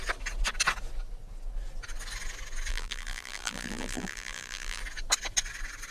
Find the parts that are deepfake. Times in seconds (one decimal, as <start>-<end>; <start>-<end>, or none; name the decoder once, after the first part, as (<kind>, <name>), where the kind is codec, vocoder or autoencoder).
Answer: 2.7-4.8 (vocoder, BigVGAN v2)